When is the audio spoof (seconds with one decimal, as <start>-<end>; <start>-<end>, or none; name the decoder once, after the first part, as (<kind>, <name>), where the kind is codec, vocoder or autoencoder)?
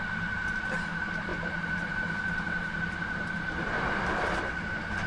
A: 1.3-4.4 (vocoder, BigVGAN v2)